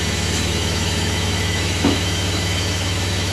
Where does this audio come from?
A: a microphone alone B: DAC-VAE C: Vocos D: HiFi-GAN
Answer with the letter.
B